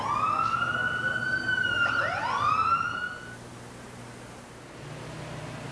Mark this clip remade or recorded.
recorded